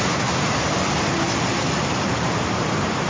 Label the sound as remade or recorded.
remade